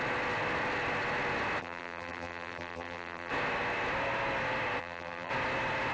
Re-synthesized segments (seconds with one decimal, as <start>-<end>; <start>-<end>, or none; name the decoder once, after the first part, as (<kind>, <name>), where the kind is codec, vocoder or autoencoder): 1.6-3.3 (vocoder, BigVGAN v2); 4.8-5.3